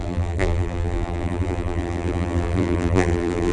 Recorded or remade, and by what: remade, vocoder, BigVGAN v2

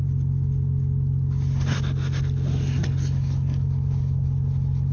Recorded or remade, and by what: recorded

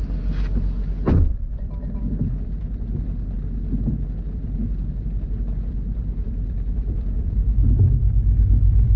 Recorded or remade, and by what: remade, vocoder, BigVGAN v2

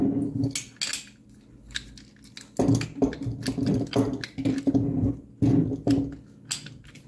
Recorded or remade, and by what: recorded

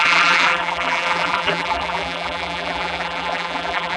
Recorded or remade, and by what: remade, vocoder, BigVGAN v2